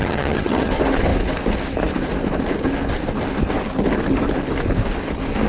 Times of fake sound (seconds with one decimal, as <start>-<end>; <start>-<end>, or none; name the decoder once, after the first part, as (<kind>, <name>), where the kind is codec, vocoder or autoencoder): 0.0-0.7 (vocoder, HiFi-GAN)